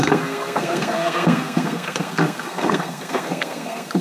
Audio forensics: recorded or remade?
remade